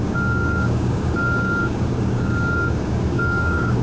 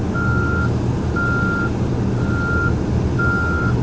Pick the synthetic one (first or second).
first